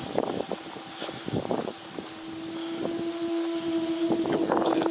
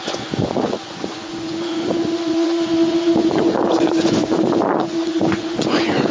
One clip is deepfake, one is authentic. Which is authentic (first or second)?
first